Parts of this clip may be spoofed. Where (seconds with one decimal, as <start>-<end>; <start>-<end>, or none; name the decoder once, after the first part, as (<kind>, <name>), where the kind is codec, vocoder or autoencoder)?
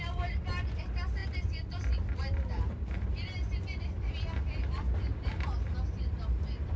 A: none